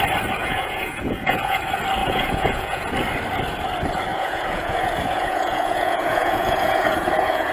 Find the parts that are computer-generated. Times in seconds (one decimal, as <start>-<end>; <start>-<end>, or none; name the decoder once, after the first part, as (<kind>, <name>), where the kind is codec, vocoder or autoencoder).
0.4-1.6 (vocoder, Vocos); 2.0-2.9; 4.1-7.5